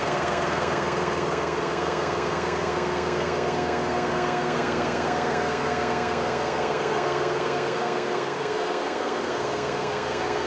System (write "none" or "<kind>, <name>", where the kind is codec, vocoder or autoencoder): codec, SNAC